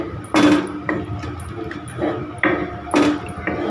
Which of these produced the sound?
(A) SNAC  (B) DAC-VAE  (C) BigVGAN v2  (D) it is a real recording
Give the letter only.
D